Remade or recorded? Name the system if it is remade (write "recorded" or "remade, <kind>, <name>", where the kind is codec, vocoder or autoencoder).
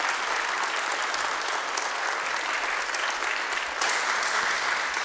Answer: recorded